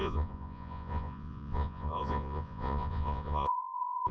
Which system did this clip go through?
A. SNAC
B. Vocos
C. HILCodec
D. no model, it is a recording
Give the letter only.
B